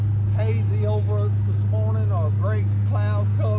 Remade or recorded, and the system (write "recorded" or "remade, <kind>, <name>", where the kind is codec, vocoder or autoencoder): recorded